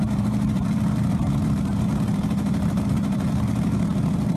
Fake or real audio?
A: fake